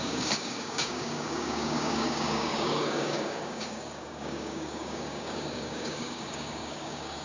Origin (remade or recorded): remade